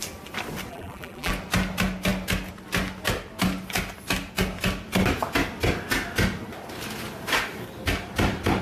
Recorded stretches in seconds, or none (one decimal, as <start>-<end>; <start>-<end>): 0.0-0.7; 1.3-8.6